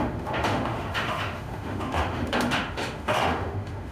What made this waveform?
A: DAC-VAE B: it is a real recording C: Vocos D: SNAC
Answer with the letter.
A